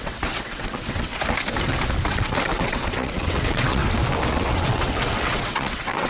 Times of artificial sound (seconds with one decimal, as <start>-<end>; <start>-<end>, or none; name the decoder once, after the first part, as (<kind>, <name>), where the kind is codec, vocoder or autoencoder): 0.0-1.1 (vocoder, WaveNeXt); 2.1-3.8; 4.3-6.1